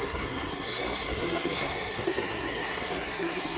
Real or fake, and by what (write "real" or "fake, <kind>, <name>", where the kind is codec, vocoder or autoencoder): fake, codec, SNAC